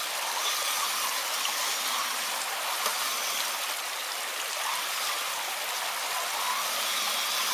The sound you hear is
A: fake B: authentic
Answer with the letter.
B